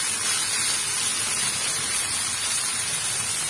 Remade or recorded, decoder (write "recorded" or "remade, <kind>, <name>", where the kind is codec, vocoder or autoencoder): recorded